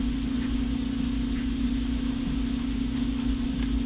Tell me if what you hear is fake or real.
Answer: real